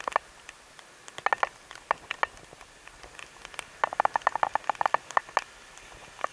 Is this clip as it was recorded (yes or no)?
yes